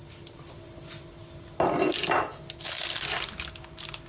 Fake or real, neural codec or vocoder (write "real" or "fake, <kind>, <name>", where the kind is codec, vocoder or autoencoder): real